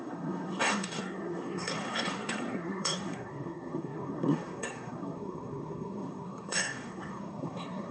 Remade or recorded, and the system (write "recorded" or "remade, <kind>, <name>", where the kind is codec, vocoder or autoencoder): remade, codec, SNAC